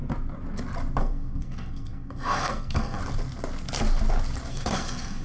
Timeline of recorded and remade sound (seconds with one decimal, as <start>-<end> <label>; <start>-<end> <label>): 0.0-1.0 recorded; 1.0-3.0 remade; 3.0-4.5 recorded; 4.5-5.2 remade